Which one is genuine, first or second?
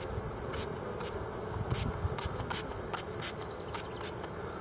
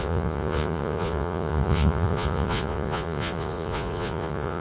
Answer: first